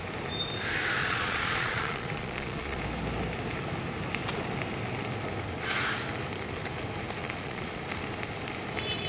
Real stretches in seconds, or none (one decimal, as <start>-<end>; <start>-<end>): 0.0-1.0; 2.8-7.2; 7.8-9.1